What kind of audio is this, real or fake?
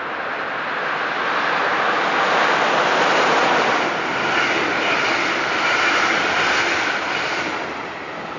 real